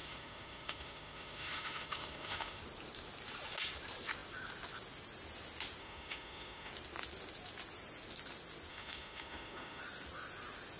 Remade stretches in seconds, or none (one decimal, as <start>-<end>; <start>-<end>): 0.0-2.6; 5.8-6.7; 8.7-9.8